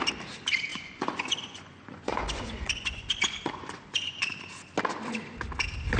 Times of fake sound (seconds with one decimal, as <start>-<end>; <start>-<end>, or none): 0.7-4.3